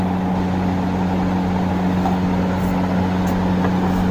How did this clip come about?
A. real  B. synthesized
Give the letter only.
A